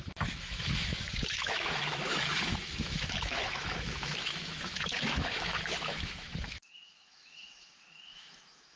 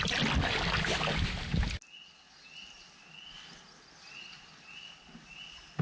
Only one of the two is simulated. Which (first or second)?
first